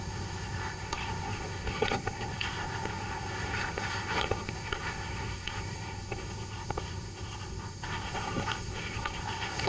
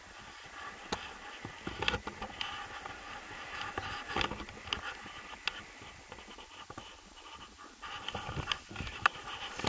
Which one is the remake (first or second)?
first